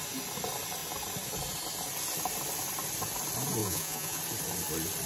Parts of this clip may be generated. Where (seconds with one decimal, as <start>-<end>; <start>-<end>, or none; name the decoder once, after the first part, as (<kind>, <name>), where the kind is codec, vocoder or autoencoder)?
3.6-4.2 (vocoder, Vocos)